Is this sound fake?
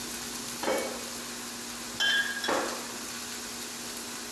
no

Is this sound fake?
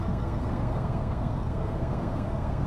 yes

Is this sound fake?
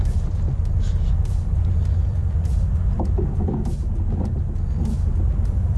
no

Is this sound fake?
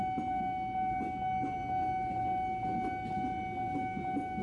no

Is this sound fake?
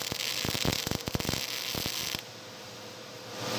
no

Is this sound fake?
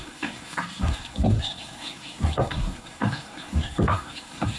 yes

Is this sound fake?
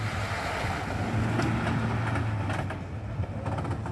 no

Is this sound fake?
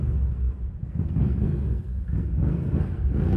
yes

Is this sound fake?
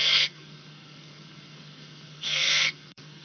yes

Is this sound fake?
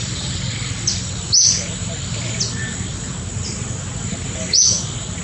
no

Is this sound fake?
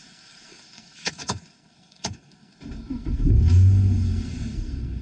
yes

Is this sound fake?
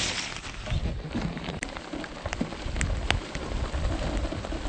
no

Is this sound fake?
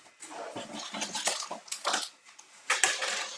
no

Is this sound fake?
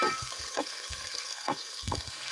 yes